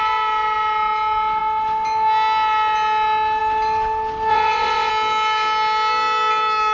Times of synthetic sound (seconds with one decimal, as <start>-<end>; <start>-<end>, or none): 4.3-4.9